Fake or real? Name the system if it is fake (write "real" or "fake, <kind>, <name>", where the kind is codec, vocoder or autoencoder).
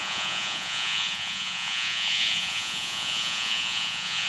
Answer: fake, vocoder, Vocos